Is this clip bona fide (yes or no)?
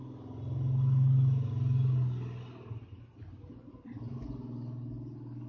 yes